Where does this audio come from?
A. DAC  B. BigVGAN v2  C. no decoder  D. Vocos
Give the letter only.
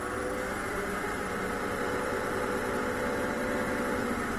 B